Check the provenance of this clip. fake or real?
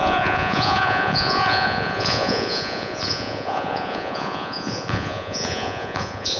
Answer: fake